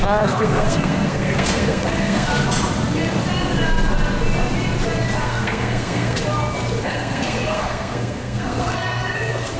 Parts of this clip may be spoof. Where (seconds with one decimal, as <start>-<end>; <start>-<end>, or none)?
0.0-2.3; 5.2-6.2; 6.8-9.6